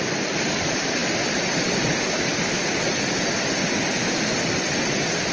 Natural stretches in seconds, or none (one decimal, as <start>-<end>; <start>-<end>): 0.0-5.3